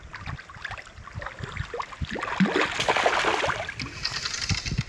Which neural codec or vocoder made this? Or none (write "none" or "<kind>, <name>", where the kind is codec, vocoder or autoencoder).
none